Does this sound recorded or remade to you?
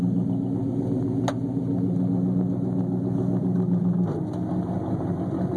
recorded